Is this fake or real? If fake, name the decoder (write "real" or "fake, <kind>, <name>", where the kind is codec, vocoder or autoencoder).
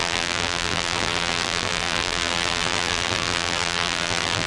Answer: fake, vocoder, BigVGAN v2